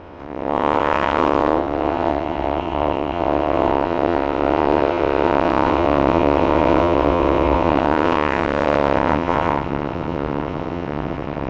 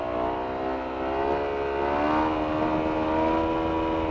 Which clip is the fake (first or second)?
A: first